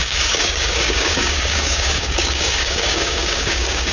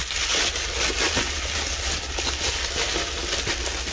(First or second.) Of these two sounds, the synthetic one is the first